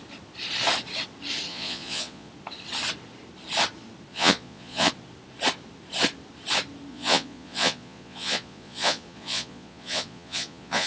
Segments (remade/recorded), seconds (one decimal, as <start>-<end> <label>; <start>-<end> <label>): 0.0-1.5 recorded; 1.5-2.3 remade; 2.3-4.1 recorded; 4.1-4.9 remade; 4.9-6.9 recorded; 6.9-10.9 remade